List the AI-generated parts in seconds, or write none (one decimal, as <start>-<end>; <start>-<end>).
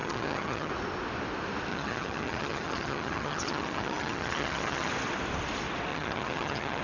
0.0-0.7; 1.7-4.9; 5.9-6.8